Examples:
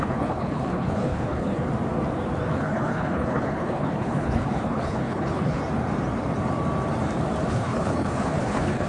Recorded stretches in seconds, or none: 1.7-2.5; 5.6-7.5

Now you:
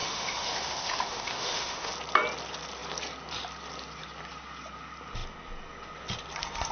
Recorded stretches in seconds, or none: 1.9-6.7

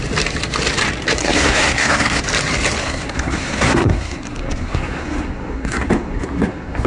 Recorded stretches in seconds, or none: 0.0-1.2; 2.2-2.8